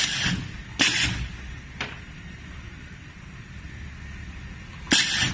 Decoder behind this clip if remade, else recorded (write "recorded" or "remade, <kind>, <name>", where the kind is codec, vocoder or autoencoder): recorded